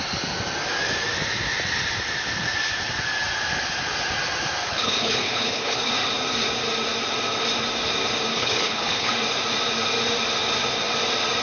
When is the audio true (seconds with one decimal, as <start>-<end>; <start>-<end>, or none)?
0.0-4.6; 5.9-8.3; 9.1-11.4